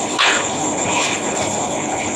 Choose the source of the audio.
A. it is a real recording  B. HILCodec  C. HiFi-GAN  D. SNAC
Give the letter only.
B